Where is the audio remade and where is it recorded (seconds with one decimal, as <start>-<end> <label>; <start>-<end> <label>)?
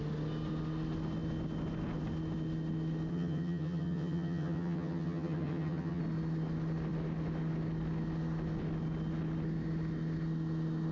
0.0-3.1 recorded; 3.1-6.0 remade; 6.0-10.9 recorded